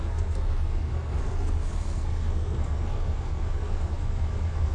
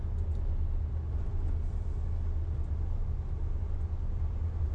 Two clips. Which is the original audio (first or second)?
second